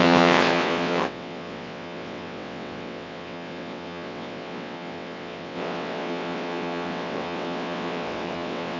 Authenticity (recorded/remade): remade